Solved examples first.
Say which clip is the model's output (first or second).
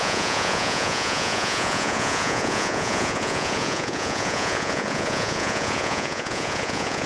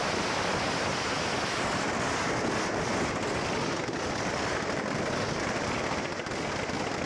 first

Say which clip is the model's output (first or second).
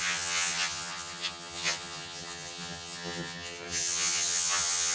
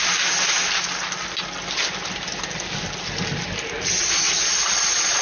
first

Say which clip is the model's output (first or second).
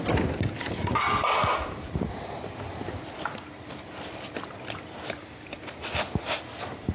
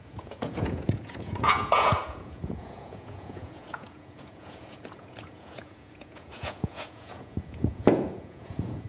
second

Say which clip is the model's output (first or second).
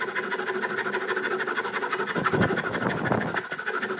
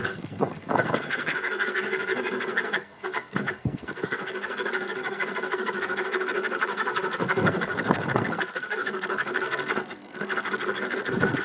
second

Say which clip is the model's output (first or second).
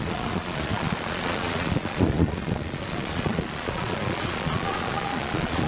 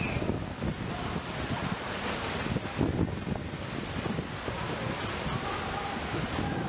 first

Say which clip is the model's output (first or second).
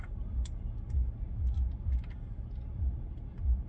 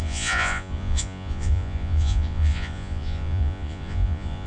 second